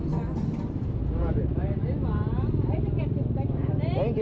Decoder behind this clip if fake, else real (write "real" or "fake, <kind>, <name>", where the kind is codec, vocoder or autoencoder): real